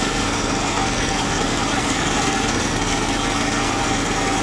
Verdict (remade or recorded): remade